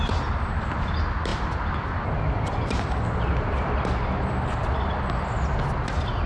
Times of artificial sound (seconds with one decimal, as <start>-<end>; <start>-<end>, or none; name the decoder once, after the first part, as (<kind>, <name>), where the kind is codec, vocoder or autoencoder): none